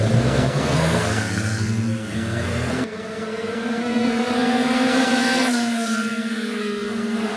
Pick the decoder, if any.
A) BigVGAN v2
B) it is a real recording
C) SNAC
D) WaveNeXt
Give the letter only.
C